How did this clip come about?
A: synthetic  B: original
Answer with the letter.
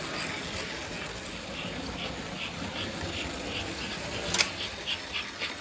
B